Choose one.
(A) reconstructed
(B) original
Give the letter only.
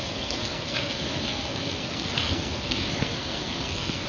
A